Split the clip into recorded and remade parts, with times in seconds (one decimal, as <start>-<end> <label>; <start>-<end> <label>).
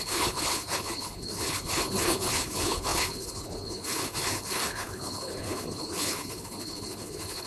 0.0-7.5 remade